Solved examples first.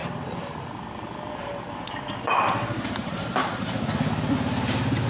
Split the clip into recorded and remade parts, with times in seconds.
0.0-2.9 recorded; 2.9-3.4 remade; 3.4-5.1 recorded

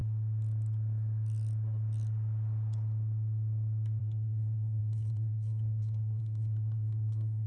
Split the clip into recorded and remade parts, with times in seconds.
0.0-4.0 recorded; 4.0-7.5 remade

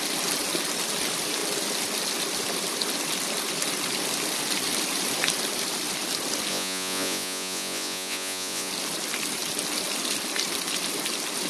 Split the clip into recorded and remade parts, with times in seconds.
0.0-6.5 recorded; 6.5-8.7 remade; 8.7-11.5 recorded

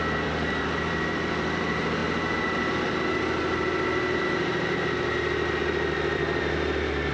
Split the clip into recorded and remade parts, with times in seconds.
0.0-2.0 remade; 2.0-5.6 recorded; 5.6-7.1 remade

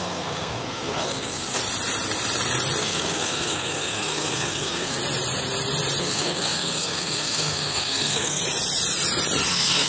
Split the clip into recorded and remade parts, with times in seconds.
0.0-1.6 remade; 1.6-2.8 recorded; 2.8-5.0 remade; 5.0-6.0 recorded; 6.0-8.4 remade; 8.4-9.5 recorded; 9.5-9.9 remade

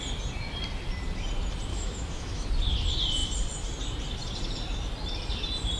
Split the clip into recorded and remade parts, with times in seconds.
0.0-1.7 recorded; 1.7-2.5 remade; 2.5-5.8 recorded

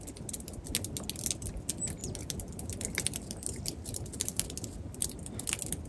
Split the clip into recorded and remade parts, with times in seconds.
0.0-2.0 recorded; 2.0-5.3 remade; 5.3-5.9 recorded